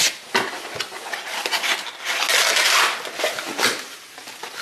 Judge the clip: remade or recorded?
recorded